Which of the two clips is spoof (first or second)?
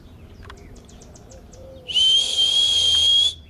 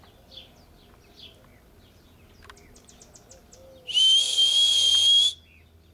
first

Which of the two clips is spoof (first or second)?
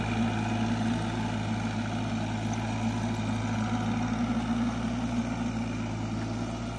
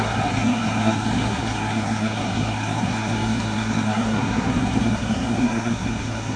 second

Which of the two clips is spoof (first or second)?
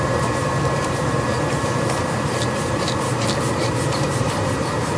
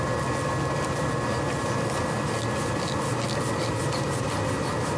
first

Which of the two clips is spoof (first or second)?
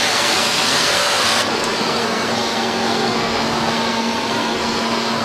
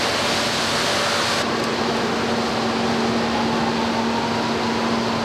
first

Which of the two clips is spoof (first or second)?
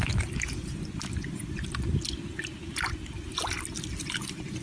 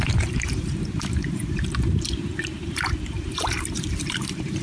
second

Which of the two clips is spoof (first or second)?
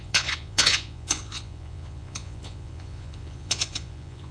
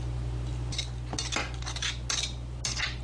first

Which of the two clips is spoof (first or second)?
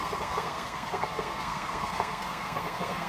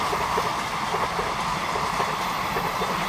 first